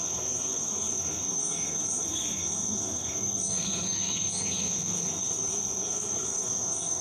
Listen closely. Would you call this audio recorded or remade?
remade